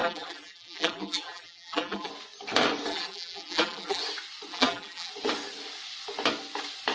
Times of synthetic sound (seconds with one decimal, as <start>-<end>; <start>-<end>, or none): 0.0-2.1; 2.9-4.0; 4.5-5.1